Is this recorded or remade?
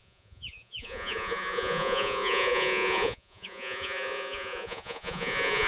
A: remade